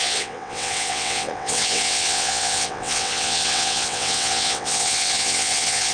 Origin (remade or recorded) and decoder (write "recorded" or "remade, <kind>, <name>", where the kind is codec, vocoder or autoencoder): remade, vocoder, WaveNeXt